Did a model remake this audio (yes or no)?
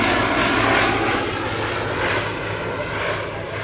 no